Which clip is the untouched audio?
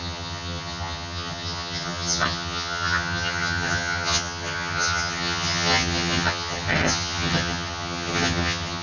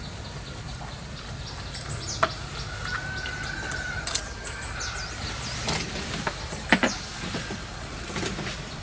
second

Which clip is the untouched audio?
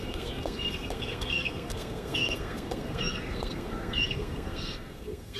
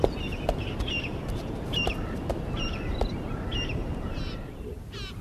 second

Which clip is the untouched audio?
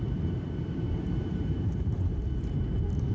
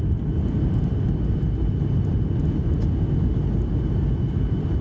second